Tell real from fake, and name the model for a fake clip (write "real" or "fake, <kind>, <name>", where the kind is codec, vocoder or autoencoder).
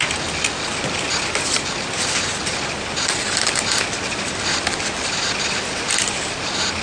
real